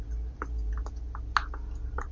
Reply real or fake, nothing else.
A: real